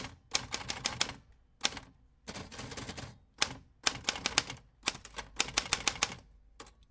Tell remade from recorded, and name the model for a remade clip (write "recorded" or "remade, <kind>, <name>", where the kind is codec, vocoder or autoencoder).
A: recorded